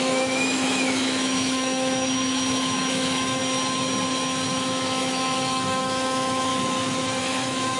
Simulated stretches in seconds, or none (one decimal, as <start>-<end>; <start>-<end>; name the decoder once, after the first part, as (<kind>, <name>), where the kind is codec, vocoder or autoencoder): 0.0-3.4 (autoencoder, DAC-VAE); 4.5-6.5; 7.2-7.8